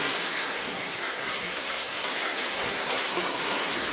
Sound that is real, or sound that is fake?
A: fake